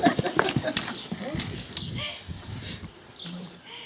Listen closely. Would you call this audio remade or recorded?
recorded